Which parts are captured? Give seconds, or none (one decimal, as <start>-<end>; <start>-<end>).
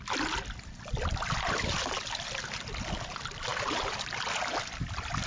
0.0-5.3